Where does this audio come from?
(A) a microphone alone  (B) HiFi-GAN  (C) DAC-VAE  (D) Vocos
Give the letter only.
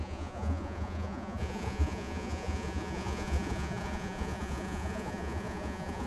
D